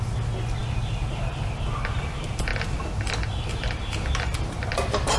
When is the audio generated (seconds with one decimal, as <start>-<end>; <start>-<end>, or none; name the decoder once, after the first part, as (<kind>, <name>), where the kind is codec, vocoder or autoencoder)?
none